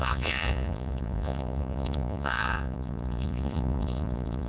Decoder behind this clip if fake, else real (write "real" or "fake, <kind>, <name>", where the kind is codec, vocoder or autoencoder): fake, vocoder, Vocos